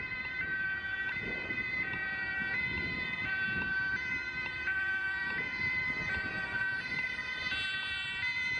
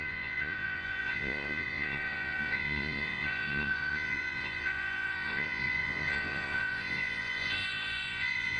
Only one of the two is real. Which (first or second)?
first